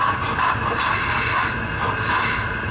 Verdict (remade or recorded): recorded